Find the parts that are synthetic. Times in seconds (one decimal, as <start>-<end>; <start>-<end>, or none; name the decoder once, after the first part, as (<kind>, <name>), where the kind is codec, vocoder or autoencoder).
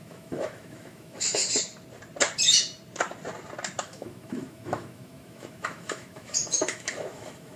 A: 0.0-1.4 (autoencoder, DAC-VAE); 3.8-7.6